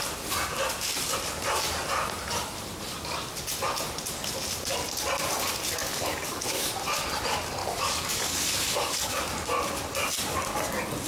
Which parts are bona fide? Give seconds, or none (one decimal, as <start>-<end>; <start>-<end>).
0.0-5.8; 6.7-7.6; 9.2-11.1